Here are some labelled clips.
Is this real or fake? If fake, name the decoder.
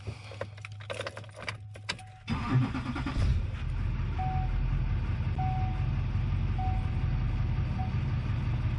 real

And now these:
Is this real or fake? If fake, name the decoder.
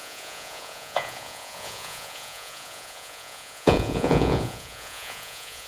fake, vocoder, Vocos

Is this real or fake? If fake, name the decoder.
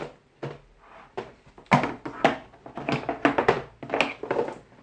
real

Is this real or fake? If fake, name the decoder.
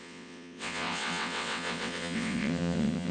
fake, vocoder, WaveNeXt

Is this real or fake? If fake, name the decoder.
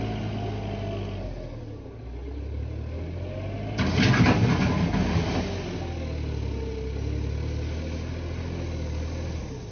real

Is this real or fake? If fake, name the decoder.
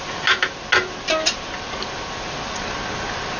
real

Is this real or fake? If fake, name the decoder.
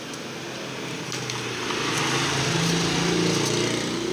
real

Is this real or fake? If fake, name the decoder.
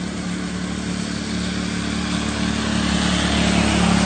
real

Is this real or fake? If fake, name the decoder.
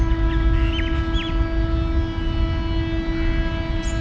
real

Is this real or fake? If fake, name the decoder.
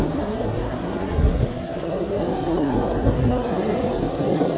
fake, codec, SNAC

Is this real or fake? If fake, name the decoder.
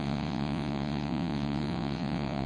fake, vocoder, WaveNeXt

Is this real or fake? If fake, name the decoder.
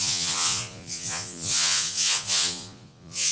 fake, vocoder, Vocos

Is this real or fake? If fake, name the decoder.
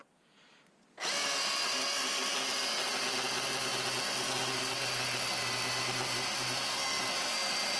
real